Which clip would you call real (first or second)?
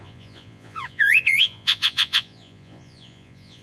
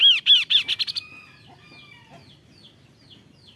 second